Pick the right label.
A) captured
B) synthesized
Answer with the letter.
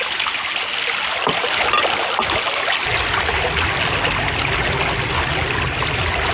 A